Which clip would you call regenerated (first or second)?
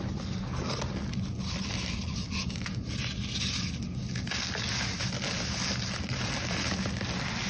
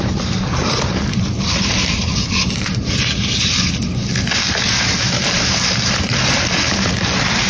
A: second